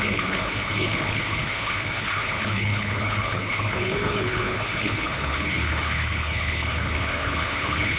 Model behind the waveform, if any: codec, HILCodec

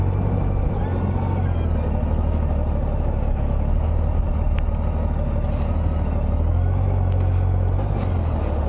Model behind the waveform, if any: none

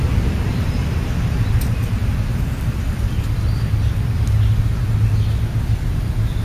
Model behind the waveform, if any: none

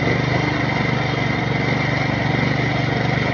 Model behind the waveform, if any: none